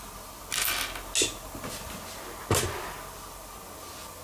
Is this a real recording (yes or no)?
yes